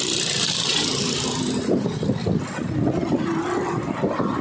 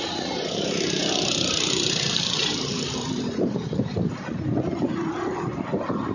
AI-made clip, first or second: second